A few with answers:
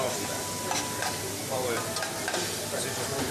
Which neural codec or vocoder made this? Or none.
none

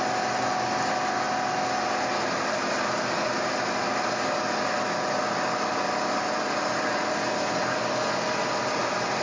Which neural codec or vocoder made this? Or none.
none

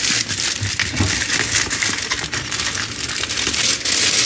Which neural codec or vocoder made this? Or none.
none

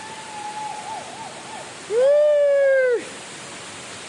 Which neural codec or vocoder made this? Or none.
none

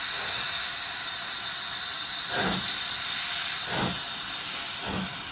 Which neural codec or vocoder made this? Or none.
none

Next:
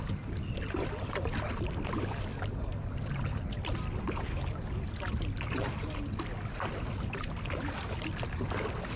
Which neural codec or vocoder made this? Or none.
none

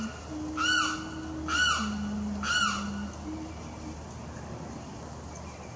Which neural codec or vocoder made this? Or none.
none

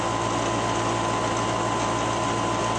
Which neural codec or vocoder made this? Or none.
none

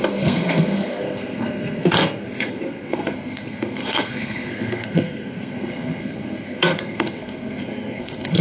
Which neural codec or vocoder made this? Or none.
codec, SNAC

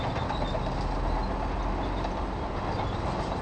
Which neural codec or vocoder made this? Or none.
none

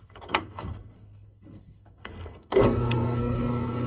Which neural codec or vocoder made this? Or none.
codec, SNAC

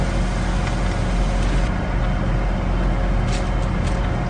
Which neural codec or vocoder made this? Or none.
none